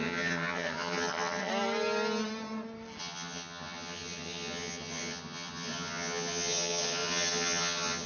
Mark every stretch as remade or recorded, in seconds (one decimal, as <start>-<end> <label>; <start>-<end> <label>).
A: 0.0-1.5 remade; 1.5-3.0 recorded; 3.0-8.1 remade